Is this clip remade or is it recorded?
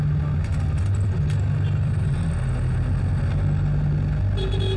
recorded